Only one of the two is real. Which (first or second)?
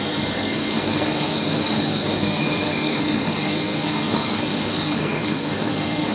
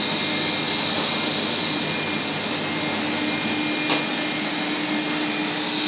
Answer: second